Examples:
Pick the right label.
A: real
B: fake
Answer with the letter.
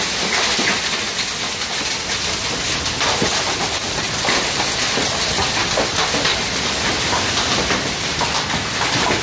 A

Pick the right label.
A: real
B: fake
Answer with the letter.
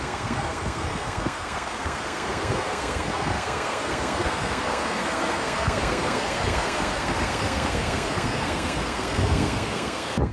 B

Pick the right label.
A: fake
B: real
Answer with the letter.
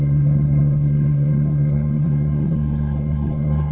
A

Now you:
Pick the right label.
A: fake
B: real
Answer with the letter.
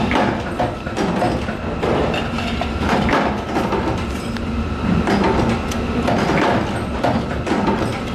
B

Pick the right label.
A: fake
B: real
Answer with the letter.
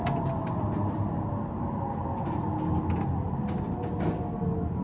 B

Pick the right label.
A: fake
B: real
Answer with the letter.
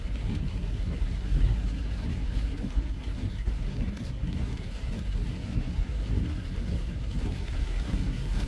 A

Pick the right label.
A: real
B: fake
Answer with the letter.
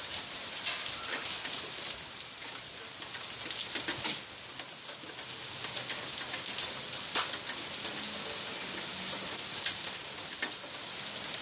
A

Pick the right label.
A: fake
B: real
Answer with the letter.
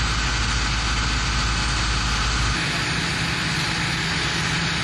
B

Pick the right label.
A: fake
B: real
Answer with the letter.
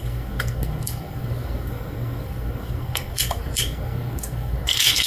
A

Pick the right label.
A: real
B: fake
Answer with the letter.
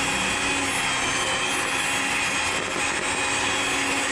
A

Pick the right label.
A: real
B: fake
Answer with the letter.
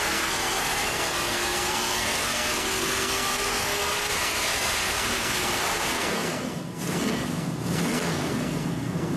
B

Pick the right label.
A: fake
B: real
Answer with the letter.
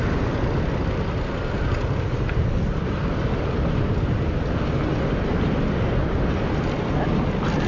B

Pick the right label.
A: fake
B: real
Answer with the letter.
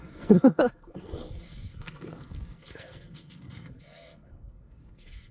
A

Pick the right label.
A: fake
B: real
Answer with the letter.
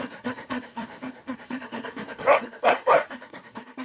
A